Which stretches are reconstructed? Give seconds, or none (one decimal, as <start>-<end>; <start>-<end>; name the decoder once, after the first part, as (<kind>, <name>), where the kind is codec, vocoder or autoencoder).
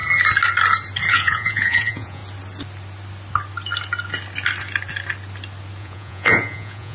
1.1-2.2 (vocoder, Vocos); 5.8-6.9